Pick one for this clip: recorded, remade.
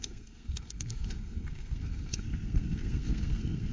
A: remade